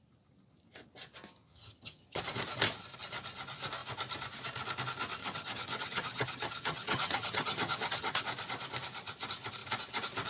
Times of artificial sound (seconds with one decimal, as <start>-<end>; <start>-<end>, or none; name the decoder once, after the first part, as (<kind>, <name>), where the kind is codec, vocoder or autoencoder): 1.5-2.2 (vocoder, HiFi-GAN); 5.2-8.2